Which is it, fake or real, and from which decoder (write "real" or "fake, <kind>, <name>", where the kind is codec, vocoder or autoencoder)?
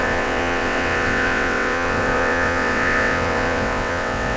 fake, vocoder, WaveNeXt